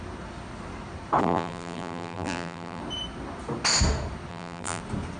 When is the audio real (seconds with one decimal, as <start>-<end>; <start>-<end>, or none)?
0.0-1.2; 2.8-4.3; 4.8-5.2